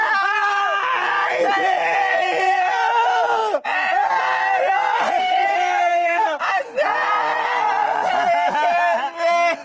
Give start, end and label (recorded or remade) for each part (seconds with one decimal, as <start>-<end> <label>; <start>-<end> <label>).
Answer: 0.0-5.2 recorded; 5.2-6.4 remade; 6.4-9.6 recorded

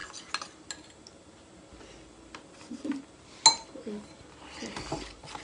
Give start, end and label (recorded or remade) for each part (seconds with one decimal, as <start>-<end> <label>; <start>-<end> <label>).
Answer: 0.0-5.4 recorded

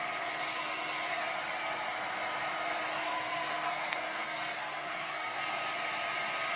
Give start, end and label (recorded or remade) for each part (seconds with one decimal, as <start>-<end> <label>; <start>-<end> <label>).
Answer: 0.0-3.0 recorded; 3.0-5.5 remade; 5.5-6.6 recorded

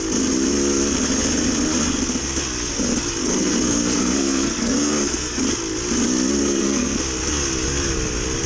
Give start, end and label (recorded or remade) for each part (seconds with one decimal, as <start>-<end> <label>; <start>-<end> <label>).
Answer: 0.0-3.2 recorded; 3.2-5.4 remade; 5.4-6.4 recorded; 6.4-7.0 remade; 7.0-8.5 recorded

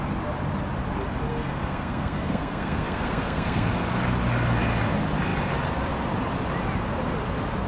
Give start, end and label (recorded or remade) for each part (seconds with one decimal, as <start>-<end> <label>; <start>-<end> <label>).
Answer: 0.0-1.3 recorded; 1.3-3.7 remade; 3.7-7.7 recorded

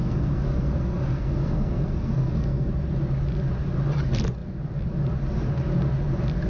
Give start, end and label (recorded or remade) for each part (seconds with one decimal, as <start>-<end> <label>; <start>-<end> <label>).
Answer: 0.0-2.7 remade; 2.7-6.5 recorded